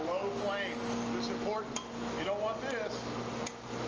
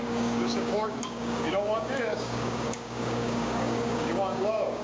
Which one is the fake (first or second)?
second